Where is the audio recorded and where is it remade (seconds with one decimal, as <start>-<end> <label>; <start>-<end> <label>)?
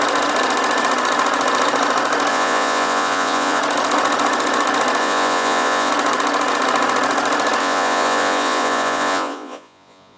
0.0-2.3 recorded; 2.3-3.6 remade; 3.6-5.0 recorded; 5.0-5.9 remade; 5.9-7.6 recorded; 7.6-10.2 remade